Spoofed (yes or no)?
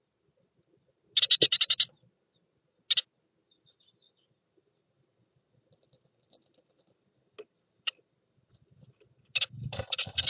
no